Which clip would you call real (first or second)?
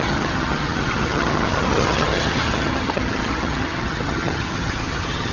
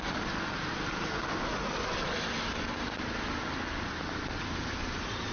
second